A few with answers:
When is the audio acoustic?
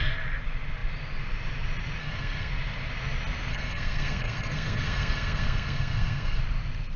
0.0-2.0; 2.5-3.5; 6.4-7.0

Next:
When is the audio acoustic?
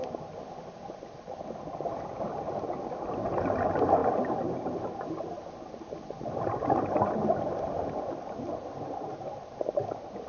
0.0-10.3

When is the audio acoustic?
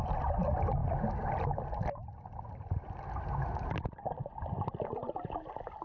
0.0-5.8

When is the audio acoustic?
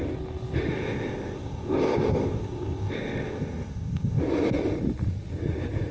0.0-0.7; 4.2-5.9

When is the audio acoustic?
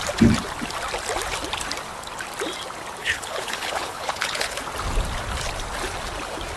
0.0-3.0; 4.6-6.6